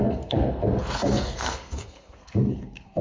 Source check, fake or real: fake